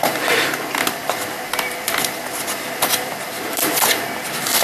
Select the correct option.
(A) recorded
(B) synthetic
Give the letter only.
B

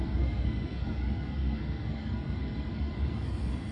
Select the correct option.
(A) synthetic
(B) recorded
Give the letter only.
A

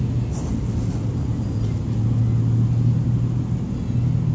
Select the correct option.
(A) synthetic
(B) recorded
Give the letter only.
B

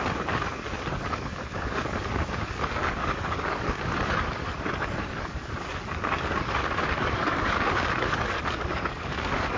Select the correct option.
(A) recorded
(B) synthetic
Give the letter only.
B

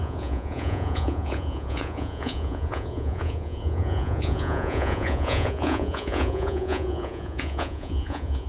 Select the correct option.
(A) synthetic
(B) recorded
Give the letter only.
A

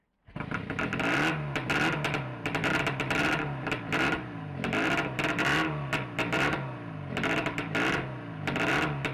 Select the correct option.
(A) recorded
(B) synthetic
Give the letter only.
A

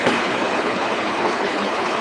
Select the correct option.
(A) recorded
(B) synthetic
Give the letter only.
B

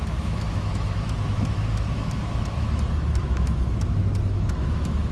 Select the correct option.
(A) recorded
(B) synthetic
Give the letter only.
B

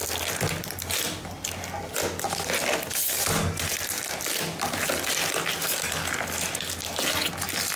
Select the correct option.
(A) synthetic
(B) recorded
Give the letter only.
B